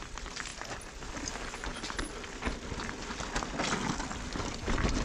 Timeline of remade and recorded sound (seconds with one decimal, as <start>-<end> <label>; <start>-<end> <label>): 0.0-5.0 recorded

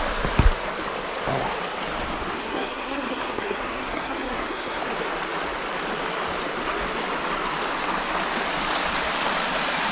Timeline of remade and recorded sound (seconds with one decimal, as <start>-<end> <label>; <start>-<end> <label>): 0.0-2.4 recorded; 2.4-4.8 remade; 4.8-9.9 recorded

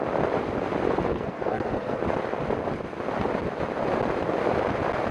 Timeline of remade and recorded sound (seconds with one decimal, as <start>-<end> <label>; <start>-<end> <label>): 0.0-1.1 recorded; 1.1-2.0 remade; 2.0-5.1 recorded

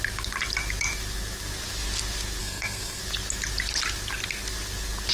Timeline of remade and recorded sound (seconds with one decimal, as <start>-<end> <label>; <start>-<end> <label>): 0.0-2.4 recorded; 2.4-3.0 remade; 3.0-5.1 recorded

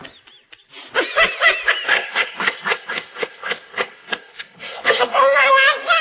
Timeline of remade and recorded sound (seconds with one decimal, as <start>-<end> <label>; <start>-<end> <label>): 0.0-1.9 recorded; 1.9-5.5 remade; 5.5-6.0 recorded

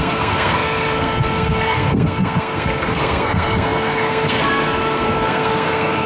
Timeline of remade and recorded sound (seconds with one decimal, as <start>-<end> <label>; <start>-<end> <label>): 0.0-6.1 remade

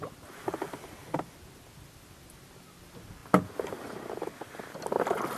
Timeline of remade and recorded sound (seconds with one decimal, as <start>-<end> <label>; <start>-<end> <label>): 0.0-5.4 recorded